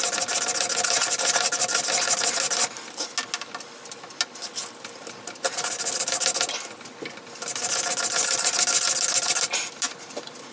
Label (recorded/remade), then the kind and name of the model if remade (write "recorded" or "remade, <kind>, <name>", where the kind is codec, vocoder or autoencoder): recorded